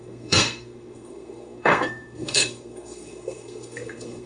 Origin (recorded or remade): remade